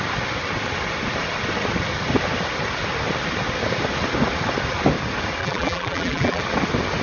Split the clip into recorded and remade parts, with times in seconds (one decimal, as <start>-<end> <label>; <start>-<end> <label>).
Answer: 0.0-5.4 recorded; 5.4-6.4 remade; 6.4-7.0 recorded